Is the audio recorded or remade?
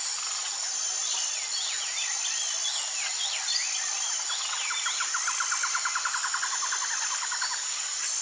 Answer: recorded